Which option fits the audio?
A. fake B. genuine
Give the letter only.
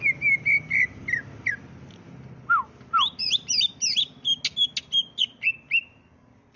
B